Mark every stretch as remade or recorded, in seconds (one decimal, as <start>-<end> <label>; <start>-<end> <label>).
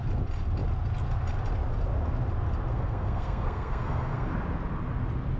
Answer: 0.0-2.7 recorded; 2.7-4.3 remade; 4.3-5.4 recorded